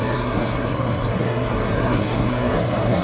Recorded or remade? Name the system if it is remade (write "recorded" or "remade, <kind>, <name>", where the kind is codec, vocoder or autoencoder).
remade, codec, SNAC